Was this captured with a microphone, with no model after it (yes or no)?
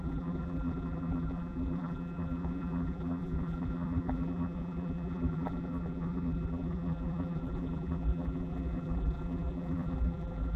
no